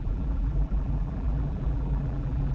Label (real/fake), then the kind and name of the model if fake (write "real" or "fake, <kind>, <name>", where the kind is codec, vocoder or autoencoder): fake, vocoder, BigVGAN v2